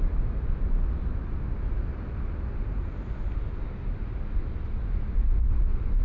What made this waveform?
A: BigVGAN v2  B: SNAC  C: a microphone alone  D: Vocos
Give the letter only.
C